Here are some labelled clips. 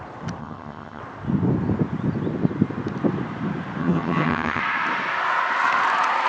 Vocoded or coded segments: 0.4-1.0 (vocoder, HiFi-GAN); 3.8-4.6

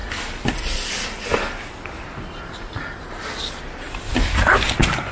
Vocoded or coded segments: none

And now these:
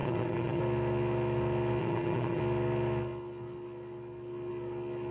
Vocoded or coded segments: 0.0-0.6 (vocoder, HiFi-GAN); 1.8-2.4